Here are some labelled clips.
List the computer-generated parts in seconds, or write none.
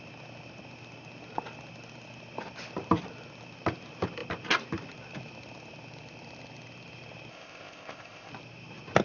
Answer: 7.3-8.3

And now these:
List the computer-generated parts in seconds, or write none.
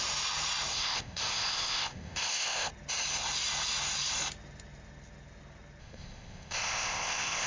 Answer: 0.7-2.7; 5.8-7.5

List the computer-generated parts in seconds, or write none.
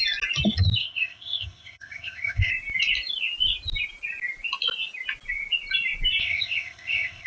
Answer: 0.8-2.5; 6.2-7.3